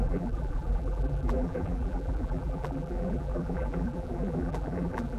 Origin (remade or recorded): remade